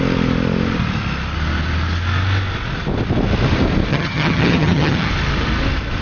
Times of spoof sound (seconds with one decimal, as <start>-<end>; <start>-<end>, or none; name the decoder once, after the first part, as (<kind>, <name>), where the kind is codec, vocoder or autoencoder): 3.9-5.1 (vocoder, HiFi-GAN)